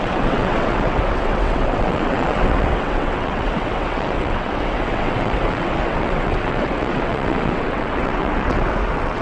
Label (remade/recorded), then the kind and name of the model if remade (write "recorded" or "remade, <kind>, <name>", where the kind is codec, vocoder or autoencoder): remade, vocoder, WaveNeXt